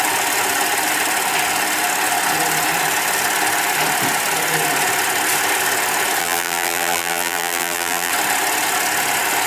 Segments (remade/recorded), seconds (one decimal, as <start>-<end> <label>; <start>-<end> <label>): 0.0-6.2 recorded; 6.2-8.1 remade; 8.1-9.5 recorded

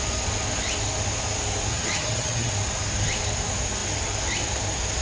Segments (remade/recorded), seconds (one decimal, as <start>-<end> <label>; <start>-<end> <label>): 0.0-1.7 recorded; 1.7-2.5 remade; 2.5-5.0 recorded